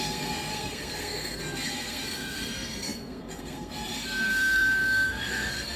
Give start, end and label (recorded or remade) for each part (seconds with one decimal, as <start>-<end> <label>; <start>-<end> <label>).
0.0-5.8 remade